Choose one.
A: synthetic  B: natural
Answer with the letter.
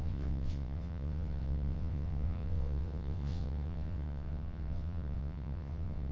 A